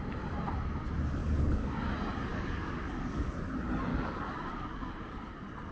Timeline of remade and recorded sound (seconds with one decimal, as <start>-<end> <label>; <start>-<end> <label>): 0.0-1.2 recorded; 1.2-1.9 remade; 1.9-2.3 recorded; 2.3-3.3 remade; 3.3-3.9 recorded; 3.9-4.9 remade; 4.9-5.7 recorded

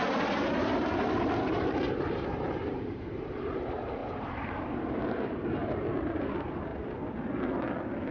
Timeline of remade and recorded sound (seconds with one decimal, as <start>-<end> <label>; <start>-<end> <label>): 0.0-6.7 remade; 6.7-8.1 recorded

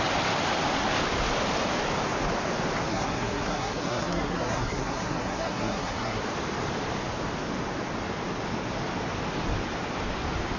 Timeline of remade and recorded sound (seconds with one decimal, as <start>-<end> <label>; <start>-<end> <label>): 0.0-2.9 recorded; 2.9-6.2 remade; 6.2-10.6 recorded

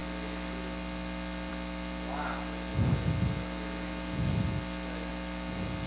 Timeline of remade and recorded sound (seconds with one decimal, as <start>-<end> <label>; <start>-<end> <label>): 0.0-5.9 recorded

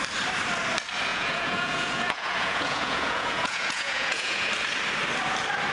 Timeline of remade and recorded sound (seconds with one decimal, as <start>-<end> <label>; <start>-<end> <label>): 0.0-1.1 recorded; 1.1-4.5 remade; 4.5-5.7 recorded

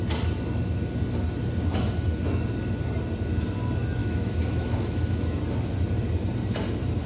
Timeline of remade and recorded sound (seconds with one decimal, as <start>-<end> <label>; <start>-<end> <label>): 0.0-4.0 recorded; 4.0-5.4 remade; 5.4-7.1 recorded

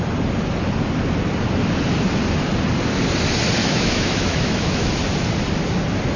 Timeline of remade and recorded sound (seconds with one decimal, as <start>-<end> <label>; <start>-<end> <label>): 0.0-3.6 recorded; 3.6-4.9 remade; 4.9-6.2 recorded

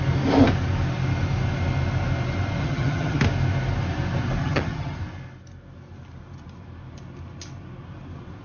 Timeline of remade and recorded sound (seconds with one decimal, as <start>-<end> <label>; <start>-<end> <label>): 0.0-2.6 recorded; 2.6-3.2 remade; 3.2-4.4 recorded; 4.4-5.0 remade; 5.0-8.4 recorded